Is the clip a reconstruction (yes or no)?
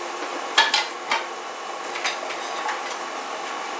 no